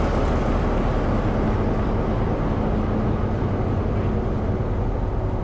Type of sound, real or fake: real